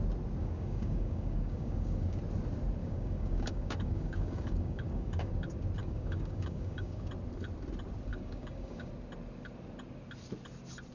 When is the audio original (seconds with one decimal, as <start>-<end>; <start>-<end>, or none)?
0.0-0.4; 2.2-2.8; 5.3-5.8; 7.1-8.1; 8.9-10.9